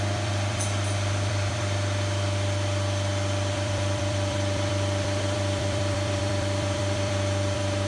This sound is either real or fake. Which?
fake